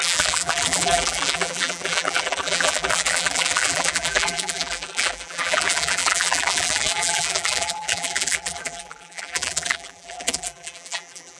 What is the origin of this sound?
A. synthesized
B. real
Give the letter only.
A